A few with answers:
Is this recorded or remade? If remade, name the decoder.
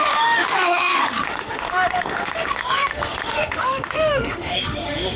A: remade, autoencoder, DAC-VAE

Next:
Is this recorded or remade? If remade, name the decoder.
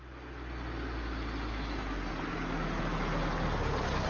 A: recorded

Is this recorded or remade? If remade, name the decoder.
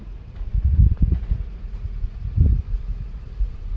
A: remade, vocoder, Vocos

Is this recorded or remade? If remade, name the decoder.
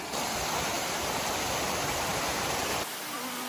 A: remade, vocoder, BigVGAN v2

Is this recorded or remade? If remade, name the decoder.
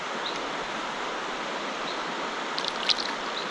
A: recorded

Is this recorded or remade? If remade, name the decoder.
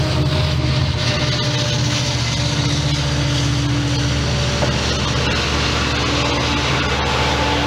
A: recorded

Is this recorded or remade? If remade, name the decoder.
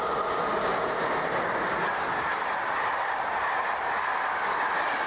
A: recorded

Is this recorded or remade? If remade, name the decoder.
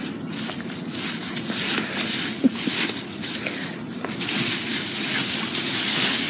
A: recorded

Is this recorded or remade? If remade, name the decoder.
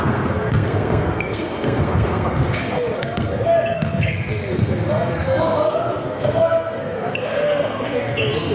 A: remade, codec, SNAC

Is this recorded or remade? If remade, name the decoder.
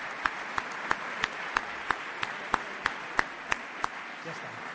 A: recorded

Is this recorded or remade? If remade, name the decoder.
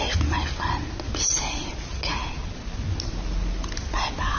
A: recorded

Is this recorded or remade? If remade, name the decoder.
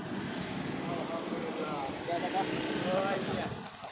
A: recorded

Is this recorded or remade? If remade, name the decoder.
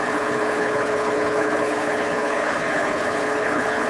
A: remade, codec, HILCodec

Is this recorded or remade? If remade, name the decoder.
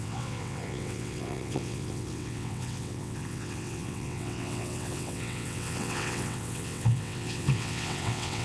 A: remade, vocoder, WaveNeXt